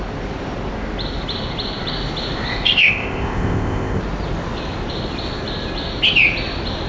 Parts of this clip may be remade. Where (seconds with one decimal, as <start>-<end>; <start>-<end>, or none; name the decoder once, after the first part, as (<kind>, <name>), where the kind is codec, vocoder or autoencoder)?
2.5-4.0 (codec, ZipCodec)